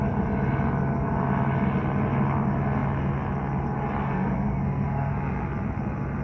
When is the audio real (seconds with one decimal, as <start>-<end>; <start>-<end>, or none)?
0.0-4.0; 5.5-6.2